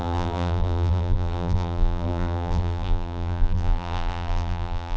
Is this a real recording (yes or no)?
no